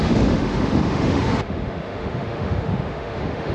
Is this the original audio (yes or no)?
no